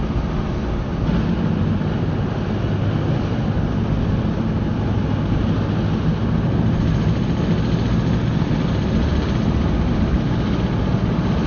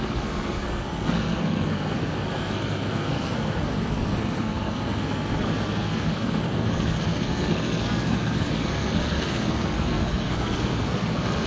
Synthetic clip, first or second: second